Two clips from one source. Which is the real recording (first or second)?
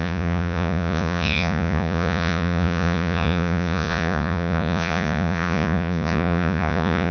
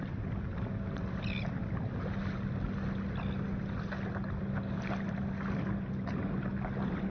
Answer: second